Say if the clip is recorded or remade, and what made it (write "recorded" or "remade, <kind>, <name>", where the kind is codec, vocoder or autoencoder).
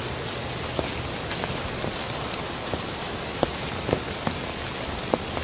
recorded